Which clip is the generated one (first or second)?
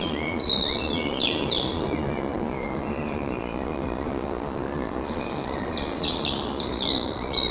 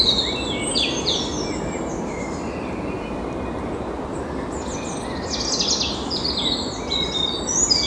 first